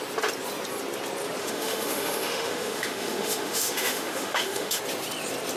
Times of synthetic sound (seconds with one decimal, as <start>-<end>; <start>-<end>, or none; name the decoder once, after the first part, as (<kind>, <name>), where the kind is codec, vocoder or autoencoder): 1.4-4.8 (autoencoder, DAC-VAE)